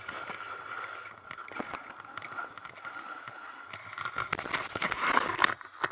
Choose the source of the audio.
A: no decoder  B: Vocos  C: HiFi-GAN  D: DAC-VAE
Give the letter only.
A